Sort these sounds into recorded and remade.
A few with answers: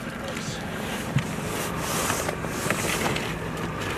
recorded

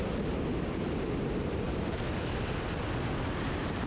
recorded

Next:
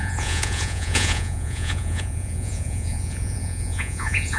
remade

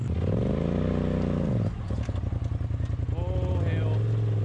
recorded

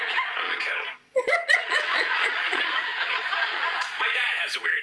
remade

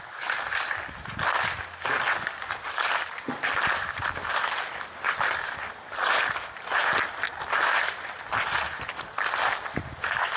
recorded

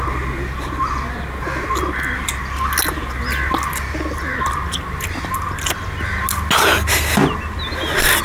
recorded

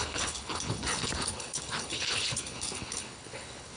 remade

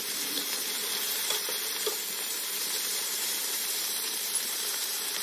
remade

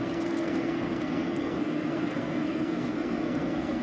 remade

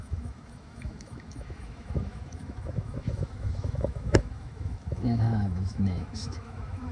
remade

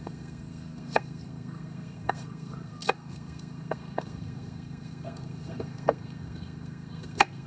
remade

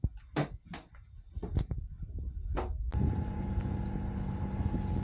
recorded